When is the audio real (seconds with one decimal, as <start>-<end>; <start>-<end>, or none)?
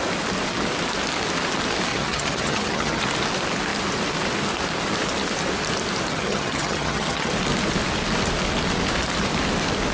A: 0.0-1.9; 3.0-6.1; 7.3-9.9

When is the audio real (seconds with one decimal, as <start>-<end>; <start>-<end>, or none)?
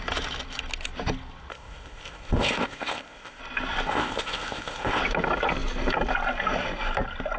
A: 0.0-1.5; 3.4-3.9; 5.0-7.4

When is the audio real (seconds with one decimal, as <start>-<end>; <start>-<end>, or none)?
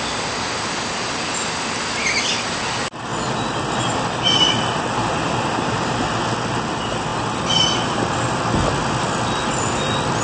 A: 0.0-10.2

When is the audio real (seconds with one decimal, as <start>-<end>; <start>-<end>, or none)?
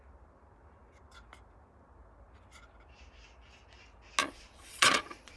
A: 0.0-4.2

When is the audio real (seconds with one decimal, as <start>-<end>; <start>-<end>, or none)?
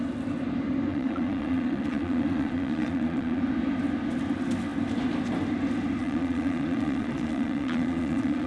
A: 0.0-0.9; 3.4-6.0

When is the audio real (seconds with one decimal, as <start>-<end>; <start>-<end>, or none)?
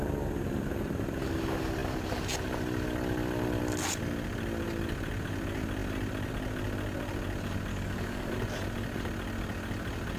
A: 0.0-7.7; 8.3-10.2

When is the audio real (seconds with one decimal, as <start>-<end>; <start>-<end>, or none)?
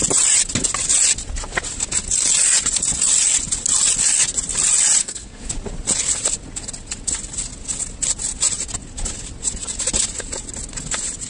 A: 0.0-5.0; 5.5-11.3